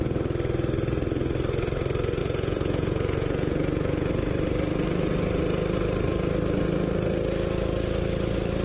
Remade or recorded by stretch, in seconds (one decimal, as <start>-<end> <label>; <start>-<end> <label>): 0.0-2.2 recorded; 2.2-4.1 remade; 4.1-8.6 recorded